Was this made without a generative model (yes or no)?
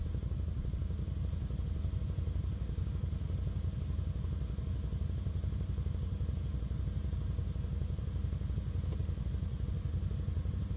yes